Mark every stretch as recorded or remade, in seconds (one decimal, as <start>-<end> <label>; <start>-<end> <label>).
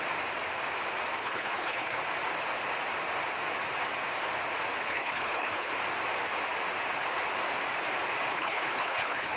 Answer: 0.0-1.2 recorded; 1.2-2.0 remade; 2.0-4.8 recorded; 4.8-5.7 remade; 5.7-8.3 recorded; 8.3-9.4 remade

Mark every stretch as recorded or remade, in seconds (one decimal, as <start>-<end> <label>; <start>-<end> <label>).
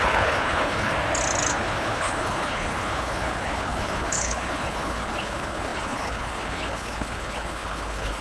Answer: 0.0-0.9 remade; 0.9-1.5 recorded; 1.5-8.2 remade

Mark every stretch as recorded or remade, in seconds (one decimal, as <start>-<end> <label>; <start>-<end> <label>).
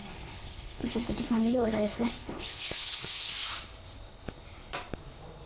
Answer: 0.0-3.3 remade; 3.3-5.5 recorded